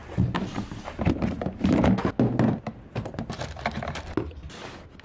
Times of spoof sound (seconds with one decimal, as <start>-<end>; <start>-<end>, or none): none